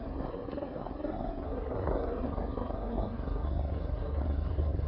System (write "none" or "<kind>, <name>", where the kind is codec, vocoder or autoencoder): codec, SNAC